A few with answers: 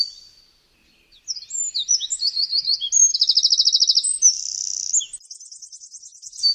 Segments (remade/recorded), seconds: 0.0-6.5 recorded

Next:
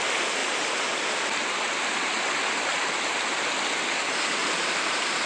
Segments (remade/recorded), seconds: 0.0-0.4 recorded; 0.4-0.9 remade; 0.9-2.7 recorded; 2.7-3.5 remade; 3.5-4.4 recorded; 4.4-5.3 remade

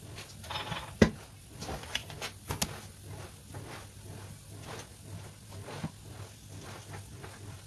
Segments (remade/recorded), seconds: 0.0-7.7 recorded

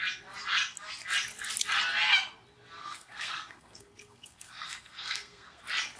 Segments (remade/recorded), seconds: 0.0-2.8 recorded; 2.8-5.6 remade; 5.6-6.0 recorded

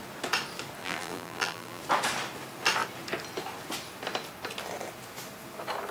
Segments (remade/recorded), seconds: 0.0-0.8 recorded; 0.8-1.8 remade; 1.8-5.9 recorded

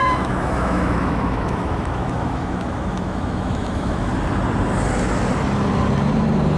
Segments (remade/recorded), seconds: 0.0-4.1 remade; 4.1-6.6 recorded